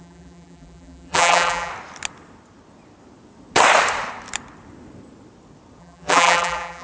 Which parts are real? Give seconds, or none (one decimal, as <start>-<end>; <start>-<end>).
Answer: 1.7-5.8